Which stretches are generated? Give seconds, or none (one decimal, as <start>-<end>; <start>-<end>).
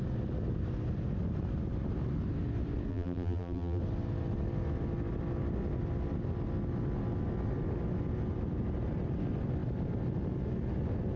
2.9-3.8